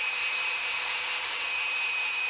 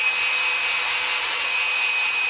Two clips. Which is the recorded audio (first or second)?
second